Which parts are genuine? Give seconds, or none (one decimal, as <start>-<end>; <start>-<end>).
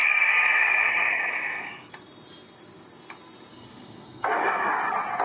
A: 1.9-3.5; 4.7-5.2